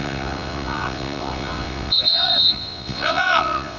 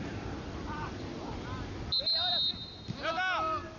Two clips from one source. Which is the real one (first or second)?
second